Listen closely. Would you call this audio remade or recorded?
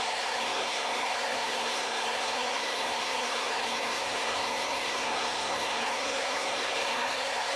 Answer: remade